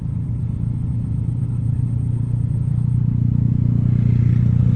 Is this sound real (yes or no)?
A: yes